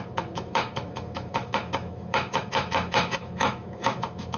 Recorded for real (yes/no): no